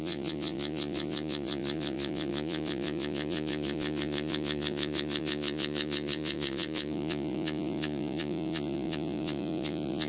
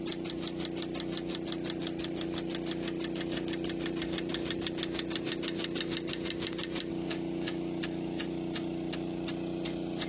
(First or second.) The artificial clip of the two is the first